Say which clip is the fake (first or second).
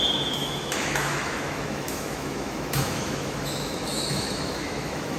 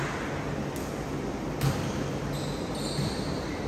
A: first